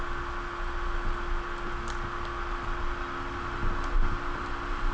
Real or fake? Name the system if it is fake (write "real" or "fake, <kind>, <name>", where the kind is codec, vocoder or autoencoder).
real